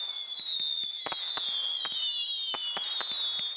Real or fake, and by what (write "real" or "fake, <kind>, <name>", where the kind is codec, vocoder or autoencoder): real